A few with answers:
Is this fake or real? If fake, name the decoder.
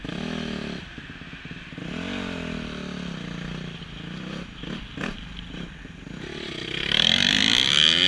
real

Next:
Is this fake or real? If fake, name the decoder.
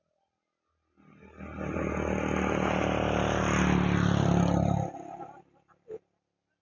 real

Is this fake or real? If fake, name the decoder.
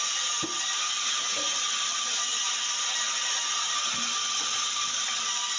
real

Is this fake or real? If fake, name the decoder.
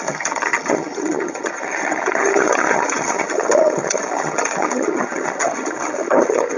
fake, vocoder, HiFi-GAN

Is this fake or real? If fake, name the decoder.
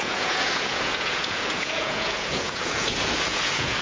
fake, vocoder, Vocos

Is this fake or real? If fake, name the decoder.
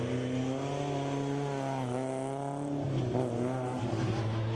real